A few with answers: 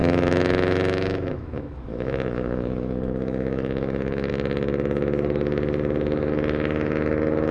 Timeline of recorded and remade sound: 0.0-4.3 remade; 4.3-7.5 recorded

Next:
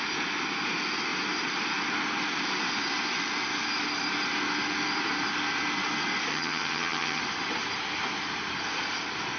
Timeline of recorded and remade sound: 0.0-6.3 recorded; 6.3-7.2 remade; 7.2-9.4 recorded

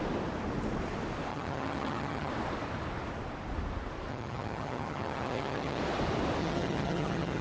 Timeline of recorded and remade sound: 0.0-1.3 recorded; 1.3-2.3 remade; 2.3-4.1 recorded; 4.1-5.8 remade; 5.8-6.4 recorded; 6.4-7.4 remade

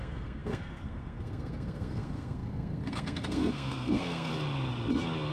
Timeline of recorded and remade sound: 0.0-4.3 remade; 4.3-5.3 recorded

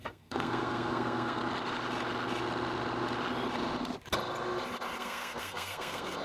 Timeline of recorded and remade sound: 0.0-1.4 remade; 1.4-5.0 recorded; 5.0-6.2 remade

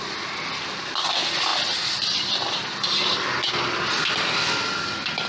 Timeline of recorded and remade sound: 0.0-5.3 recorded

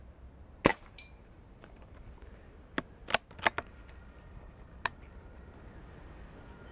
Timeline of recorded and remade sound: 0.0-0.7 recorded; 0.7-2.0 remade; 2.0-6.7 recorded

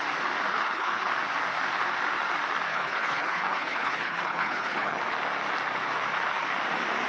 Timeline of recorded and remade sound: 0.0-0.5 recorded; 0.5-1.1 remade; 1.1-2.7 recorded; 2.7-5.0 remade; 5.0-7.1 recorded